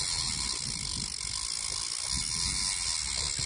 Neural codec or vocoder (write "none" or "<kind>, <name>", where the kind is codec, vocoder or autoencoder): none